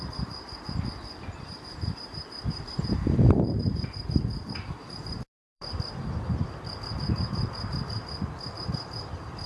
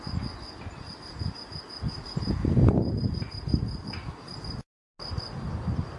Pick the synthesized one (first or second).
first